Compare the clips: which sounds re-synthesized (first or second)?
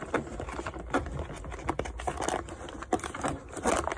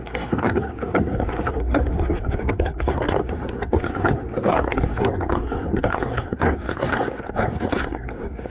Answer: second